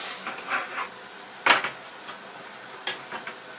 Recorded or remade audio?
recorded